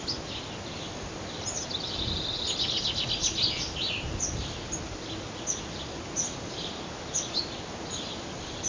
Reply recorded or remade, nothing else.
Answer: recorded